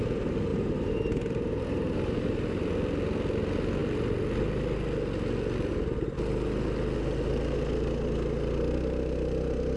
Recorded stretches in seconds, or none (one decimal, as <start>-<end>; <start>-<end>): 0.0-0.5; 2.7-9.8

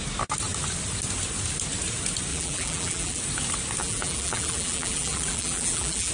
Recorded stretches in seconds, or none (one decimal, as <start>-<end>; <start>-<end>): 0.0-2.3; 3.2-3.8

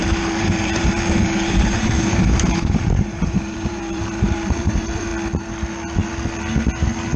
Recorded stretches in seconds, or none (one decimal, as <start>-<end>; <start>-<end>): 5.1-7.2

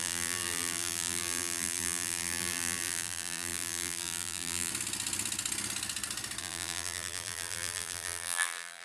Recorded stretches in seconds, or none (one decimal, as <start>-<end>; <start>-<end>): 4.7-6.4

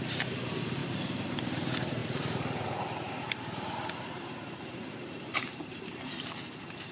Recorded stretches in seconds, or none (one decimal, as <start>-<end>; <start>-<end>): none

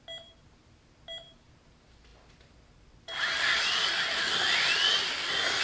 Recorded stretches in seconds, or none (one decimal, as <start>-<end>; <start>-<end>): 0.0-5.6

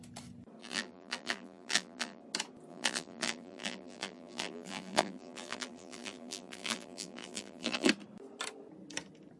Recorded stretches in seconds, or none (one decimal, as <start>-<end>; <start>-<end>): 0.0-0.6; 2.2-2.7; 7.9-9.4